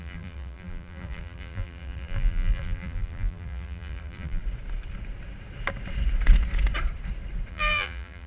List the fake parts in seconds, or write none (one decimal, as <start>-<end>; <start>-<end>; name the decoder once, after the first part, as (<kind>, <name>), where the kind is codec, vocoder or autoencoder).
0.0-4.4 (vocoder, BigVGAN v2); 7.5-8.3